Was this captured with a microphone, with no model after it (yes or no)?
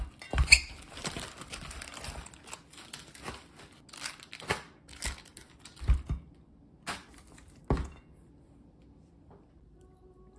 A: yes